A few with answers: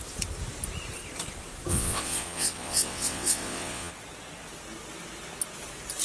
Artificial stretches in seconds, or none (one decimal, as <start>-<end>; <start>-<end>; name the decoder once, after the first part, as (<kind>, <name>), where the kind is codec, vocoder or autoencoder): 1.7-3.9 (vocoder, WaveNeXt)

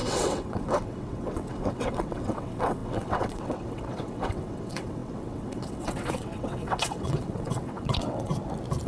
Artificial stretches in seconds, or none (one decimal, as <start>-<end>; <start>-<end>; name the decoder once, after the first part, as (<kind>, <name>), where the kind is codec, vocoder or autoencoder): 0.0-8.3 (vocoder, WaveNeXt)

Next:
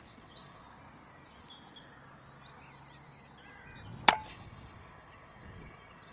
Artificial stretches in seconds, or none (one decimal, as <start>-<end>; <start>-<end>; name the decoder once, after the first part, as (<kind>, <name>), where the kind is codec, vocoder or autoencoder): 0.0-0.6 (vocoder, WaveNeXt); 4.3-6.1

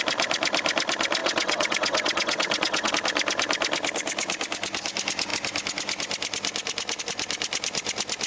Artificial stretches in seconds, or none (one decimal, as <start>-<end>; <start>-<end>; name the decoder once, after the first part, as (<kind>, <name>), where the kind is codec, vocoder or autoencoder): 1.2-2.9 (vocoder, WaveNeXt)

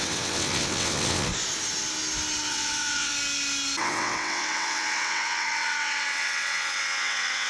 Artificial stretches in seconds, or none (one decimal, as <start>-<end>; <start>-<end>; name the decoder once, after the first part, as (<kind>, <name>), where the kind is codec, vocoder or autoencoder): 0.0-1.3 (vocoder, WaveNeXt); 2.5-3.1; 3.8-7.5

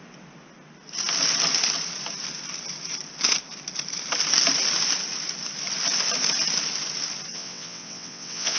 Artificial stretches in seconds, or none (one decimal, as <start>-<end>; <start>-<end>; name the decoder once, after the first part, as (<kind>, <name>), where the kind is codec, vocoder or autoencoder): 7.3-8.6 (vocoder, WaveNeXt)

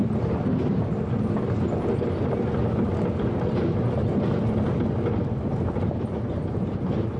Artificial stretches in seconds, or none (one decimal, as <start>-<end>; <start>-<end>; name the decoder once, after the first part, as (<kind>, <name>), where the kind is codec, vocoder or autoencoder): none

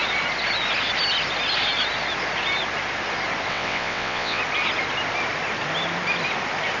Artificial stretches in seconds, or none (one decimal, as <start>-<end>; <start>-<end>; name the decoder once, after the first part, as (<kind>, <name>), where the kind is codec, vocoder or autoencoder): 3.5-4.4 (vocoder, WaveNeXt)